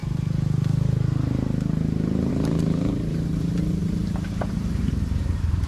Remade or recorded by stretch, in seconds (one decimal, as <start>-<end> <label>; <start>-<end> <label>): 0.0-2.3 recorded; 2.3-5.7 remade